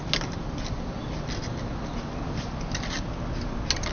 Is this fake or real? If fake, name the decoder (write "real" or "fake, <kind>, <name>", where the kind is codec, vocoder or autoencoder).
real